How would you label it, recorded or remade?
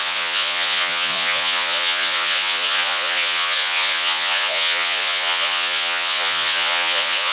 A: remade